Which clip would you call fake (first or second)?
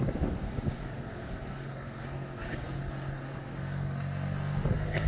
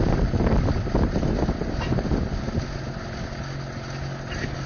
first